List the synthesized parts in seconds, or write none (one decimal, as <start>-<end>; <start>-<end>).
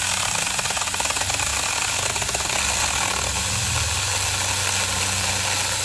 none